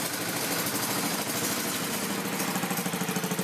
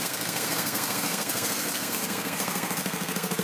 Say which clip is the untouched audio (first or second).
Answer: first